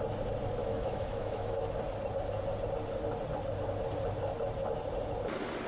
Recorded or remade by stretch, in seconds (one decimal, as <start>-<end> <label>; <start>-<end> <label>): 0.0-0.6 recorded; 0.6-1.6 remade; 1.6-5.7 recorded